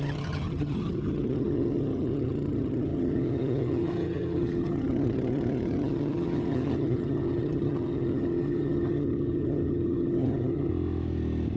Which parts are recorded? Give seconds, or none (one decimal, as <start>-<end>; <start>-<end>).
10.7-11.6